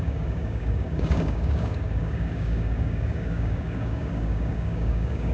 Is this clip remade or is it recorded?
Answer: remade